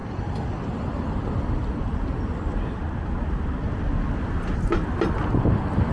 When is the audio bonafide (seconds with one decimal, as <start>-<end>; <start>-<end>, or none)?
0.0-5.9